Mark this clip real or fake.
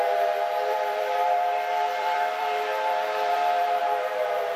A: fake